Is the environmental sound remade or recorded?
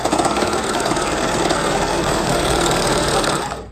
remade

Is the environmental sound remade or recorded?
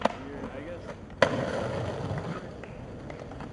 recorded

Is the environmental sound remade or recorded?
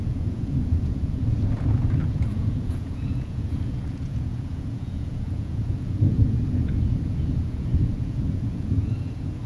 remade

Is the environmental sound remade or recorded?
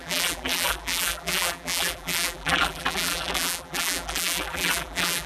remade